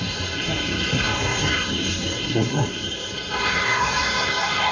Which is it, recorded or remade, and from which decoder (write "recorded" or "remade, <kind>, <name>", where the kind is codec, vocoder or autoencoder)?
remade, codec, SNAC